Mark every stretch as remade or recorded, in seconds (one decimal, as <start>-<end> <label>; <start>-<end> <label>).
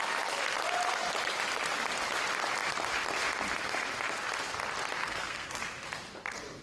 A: 0.0-5.0 recorded; 5.0-5.6 remade; 5.6-6.6 recorded